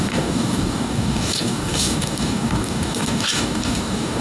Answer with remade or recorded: remade